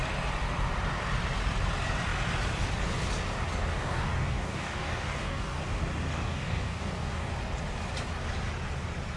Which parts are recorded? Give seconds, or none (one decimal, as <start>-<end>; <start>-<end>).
0.0-3.7; 5.6-6.1; 7.3-9.2